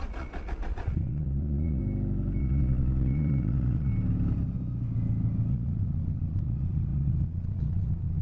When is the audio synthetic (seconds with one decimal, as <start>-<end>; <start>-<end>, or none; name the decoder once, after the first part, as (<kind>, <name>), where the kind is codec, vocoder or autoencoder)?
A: 0.0-1.8 (vocoder, Vocos); 2.4-3.9; 5.5-8.2